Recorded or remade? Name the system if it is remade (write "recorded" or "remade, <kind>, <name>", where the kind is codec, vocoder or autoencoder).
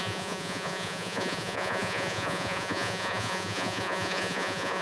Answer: remade, vocoder, Vocos